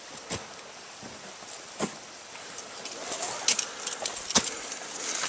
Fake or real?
real